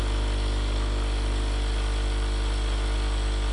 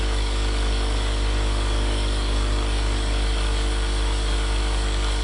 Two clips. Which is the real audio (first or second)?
first